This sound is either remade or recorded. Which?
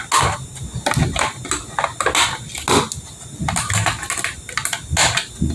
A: recorded